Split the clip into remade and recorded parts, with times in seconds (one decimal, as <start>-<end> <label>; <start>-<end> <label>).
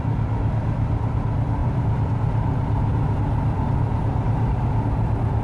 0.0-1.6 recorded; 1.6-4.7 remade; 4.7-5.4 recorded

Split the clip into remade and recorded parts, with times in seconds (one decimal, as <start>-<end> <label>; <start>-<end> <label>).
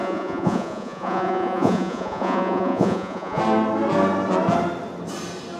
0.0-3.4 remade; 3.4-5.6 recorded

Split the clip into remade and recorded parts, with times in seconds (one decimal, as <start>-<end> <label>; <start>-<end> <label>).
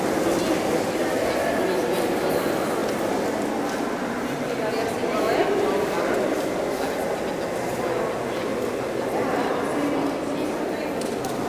0.0-11.5 recorded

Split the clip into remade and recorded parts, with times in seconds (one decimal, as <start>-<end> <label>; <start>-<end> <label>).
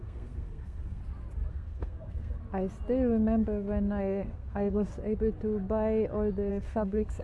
0.0-1.0 remade; 1.0-1.5 recorded; 1.5-2.4 remade; 2.4-4.0 recorded; 4.0-4.9 remade; 4.9-6.5 recorded; 6.5-7.2 remade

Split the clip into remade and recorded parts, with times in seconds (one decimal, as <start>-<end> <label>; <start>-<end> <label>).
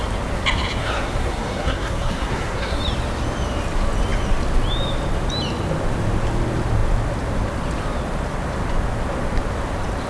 0.0-0.8 recorded; 0.8-2.8 remade; 2.8-10.1 recorded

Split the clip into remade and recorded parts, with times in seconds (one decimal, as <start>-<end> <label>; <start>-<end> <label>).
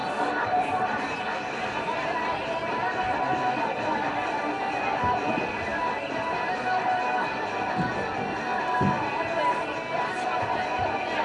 0.0-1.2 remade; 1.2-2.4 recorded; 2.4-3.2 remade; 3.2-11.2 recorded